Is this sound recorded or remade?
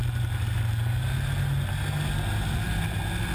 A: recorded